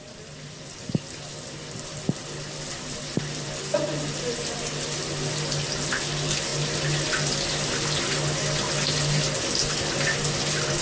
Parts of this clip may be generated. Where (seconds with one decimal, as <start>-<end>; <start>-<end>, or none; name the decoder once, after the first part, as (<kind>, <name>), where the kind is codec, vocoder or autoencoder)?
none